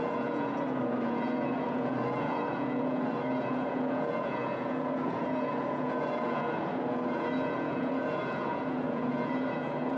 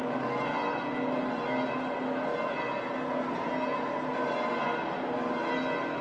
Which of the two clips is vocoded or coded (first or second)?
first